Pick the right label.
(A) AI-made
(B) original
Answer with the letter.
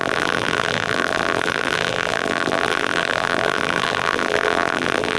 A